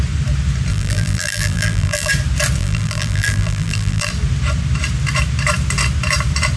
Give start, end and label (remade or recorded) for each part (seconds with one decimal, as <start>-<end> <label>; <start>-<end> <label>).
0.0-0.7 recorded; 0.7-2.1 remade; 2.1-2.6 recorded; 2.6-4.1 remade; 4.1-6.6 recorded